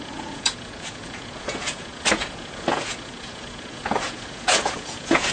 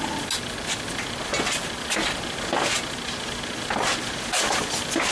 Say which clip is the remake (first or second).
first